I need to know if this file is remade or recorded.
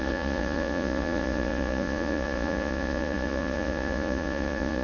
remade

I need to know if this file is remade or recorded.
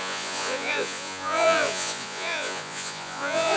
remade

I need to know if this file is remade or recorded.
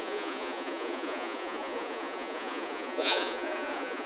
remade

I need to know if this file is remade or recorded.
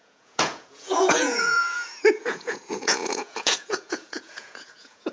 remade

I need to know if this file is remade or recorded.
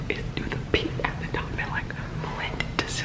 recorded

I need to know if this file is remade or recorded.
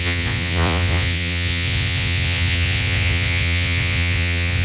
remade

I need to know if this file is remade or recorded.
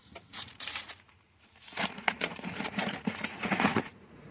remade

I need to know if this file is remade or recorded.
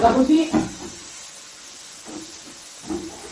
remade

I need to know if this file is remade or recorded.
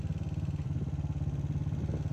recorded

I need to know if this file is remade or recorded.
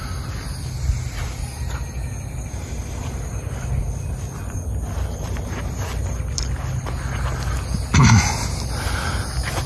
recorded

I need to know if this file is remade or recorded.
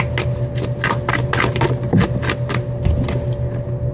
recorded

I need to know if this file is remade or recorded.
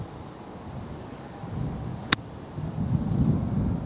recorded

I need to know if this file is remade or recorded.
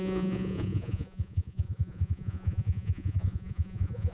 remade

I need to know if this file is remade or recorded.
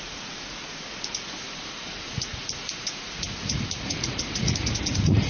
remade